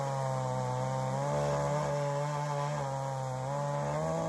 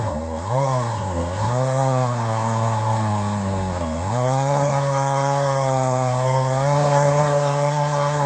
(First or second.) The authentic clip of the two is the first